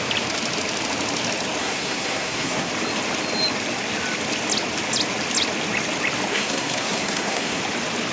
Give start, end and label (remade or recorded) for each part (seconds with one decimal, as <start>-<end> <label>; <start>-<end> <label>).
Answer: 0.0-1.6 recorded; 1.6-2.7 remade; 2.7-6.3 recorded; 6.3-7.6 remade; 7.6-8.1 recorded